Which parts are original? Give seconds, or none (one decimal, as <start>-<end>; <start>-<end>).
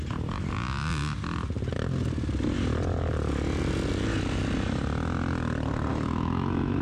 0.0-5.9